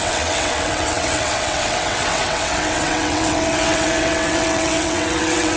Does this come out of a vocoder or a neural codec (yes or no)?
yes